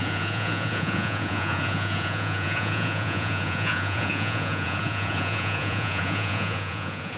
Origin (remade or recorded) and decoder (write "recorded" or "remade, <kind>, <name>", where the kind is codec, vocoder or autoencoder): remade, vocoder, Vocos